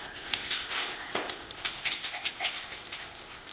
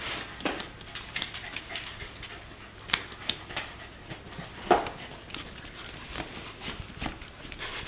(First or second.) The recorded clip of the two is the second